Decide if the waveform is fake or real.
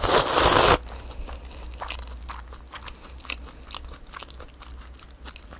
real